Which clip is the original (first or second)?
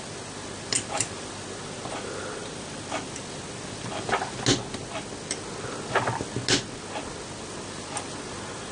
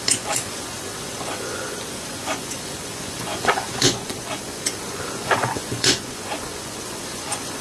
first